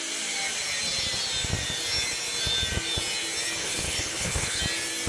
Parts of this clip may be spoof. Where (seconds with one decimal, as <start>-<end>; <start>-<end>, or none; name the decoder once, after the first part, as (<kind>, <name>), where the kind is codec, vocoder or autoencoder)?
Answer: 3.6-4.6 (codec, HILCodec)

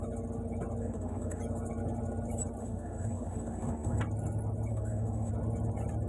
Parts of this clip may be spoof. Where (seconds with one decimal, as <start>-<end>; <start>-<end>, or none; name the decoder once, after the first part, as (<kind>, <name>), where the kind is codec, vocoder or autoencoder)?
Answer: 0.8-1.4 (autoencoder, DAC-VAE); 2.6-4.0; 4.7-5.3

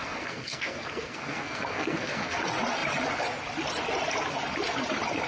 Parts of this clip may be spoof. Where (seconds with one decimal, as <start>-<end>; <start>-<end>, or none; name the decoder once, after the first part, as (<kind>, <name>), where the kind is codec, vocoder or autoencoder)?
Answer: 0.0-2.4 (codec, SNAC)

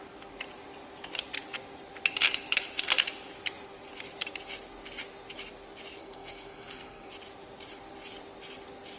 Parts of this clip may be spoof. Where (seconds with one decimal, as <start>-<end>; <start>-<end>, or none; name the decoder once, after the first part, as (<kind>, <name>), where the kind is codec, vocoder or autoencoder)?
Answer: 6.0-7.1 (codec, SNAC)

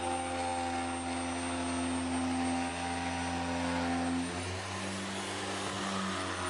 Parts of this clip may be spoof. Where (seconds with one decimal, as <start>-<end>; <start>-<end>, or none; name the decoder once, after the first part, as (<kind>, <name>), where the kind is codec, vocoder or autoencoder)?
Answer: none

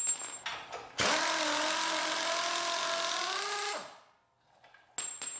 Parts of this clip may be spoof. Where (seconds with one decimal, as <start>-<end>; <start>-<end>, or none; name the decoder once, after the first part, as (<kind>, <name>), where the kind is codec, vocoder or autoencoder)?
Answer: none

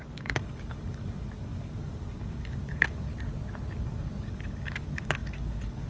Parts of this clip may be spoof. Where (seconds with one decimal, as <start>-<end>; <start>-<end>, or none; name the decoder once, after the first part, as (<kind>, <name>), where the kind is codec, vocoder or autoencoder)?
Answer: 0.0-3.1 (codec, DAC); 3.8-5.9

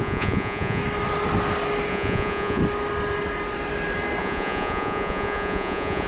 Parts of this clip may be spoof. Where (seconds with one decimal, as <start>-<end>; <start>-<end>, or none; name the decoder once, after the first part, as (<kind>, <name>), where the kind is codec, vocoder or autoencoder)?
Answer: 0.0-0.8 (vocoder, Vocos); 1.9-2.6; 4.2-6.1